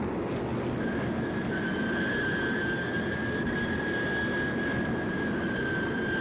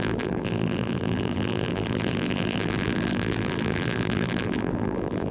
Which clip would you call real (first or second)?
first